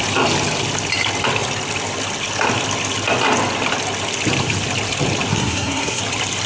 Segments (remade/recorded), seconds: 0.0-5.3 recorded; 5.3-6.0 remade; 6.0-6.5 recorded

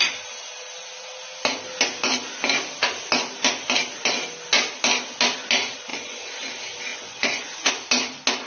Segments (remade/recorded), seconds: 0.0-5.9 recorded; 5.9-6.5 remade; 6.5-6.9 recorded; 6.9-7.7 remade; 7.7-8.5 recorded

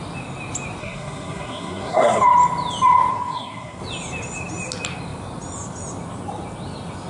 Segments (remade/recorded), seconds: 0.0-0.8 recorded; 0.8-2.2 remade; 2.2-3.1 recorded; 3.1-3.8 remade; 3.8-7.1 recorded

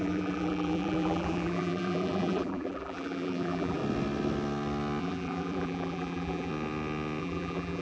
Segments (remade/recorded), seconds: 0.0-3.8 remade; 3.8-5.0 recorded; 5.0-6.5 remade; 6.5-7.2 recorded; 7.2-7.8 remade

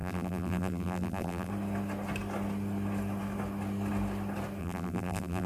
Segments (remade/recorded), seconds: 0.0-1.5 remade; 1.5-4.6 recorded; 4.6-5.5 remade

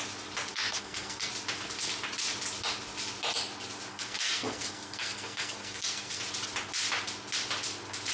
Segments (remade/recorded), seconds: 0.0-0.5 recorded; 0.5-1.3 remade; 1.3-3.9 recorded; 3.9-6.2 remade; 6.2-8.1 recorded

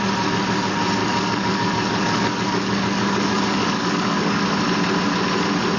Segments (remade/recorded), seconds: 0.0-1.0 recorded; 1.0-4.5 remade; 4.5-5.8 recorded